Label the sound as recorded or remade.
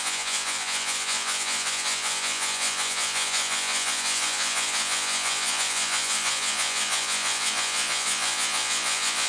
remade